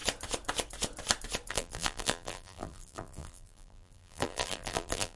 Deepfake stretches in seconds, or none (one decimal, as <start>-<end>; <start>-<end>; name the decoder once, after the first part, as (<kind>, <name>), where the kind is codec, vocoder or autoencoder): 1.5-5.2 (vocoder, BigVGAN v2)